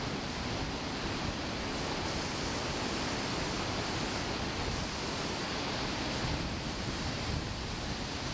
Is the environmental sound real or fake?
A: real